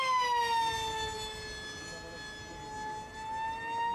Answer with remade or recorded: recorded